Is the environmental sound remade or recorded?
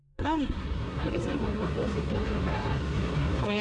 remade